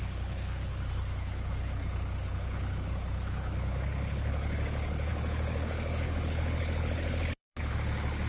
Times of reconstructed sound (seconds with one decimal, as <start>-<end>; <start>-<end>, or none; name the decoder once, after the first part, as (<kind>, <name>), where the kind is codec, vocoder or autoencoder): 0.0-8.3 (codec, HILCodec)